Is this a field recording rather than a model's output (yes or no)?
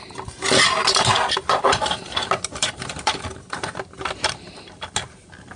yes